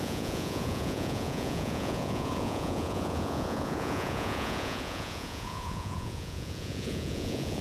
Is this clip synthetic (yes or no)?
yes